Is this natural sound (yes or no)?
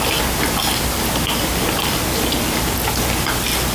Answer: yes